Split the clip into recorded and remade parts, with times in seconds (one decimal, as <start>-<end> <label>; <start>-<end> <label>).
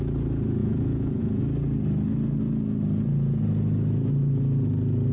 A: 0.0-0.6 recorded; 0.6-1.4 remade; 1.4-5.1 recorded